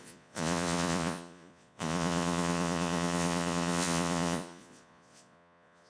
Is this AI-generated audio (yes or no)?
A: yes